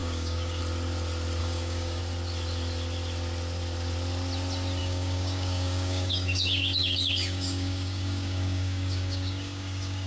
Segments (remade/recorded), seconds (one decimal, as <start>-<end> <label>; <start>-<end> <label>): 0.0-0.6 remade; 0.6-1.4 recorded; 1.4-2.0 remade; 2.0-4.8 recorded; 4.8-10.1 remade